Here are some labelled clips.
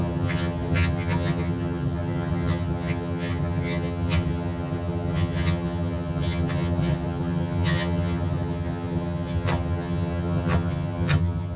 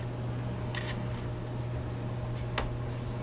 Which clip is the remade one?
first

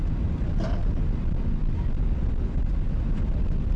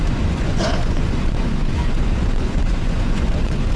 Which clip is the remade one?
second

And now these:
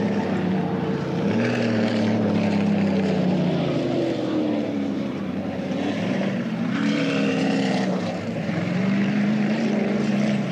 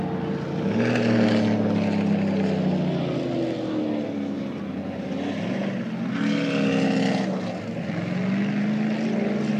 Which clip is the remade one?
first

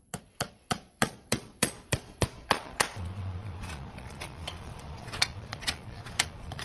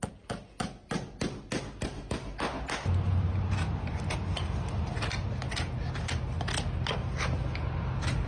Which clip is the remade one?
first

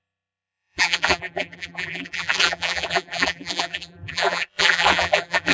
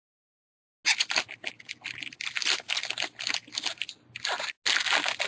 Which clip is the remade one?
first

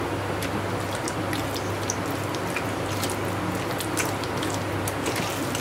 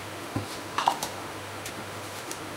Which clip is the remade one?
second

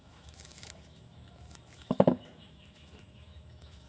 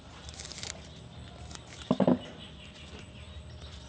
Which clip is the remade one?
first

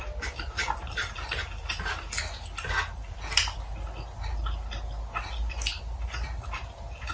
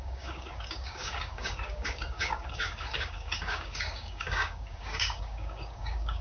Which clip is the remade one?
second